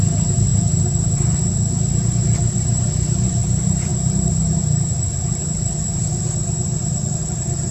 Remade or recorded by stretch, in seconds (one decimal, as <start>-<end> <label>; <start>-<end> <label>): 0.0-0.5 remade; 0.5-1.8 recorded; 1.8-7.7 remade

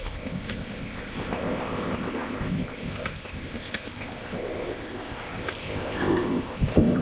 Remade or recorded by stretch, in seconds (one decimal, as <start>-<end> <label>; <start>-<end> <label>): 0.0-7.0 remade

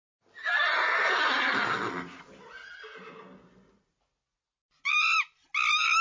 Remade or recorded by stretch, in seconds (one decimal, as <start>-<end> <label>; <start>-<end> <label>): 0.0-6.0 recorded